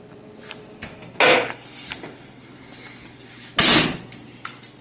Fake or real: real